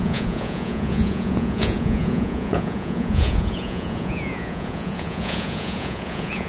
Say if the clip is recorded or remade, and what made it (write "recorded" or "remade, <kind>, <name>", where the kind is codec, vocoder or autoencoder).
remade, vocoder, Vocos